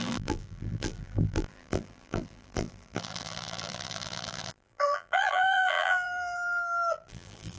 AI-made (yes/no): yes